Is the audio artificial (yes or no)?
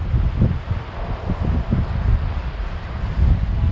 no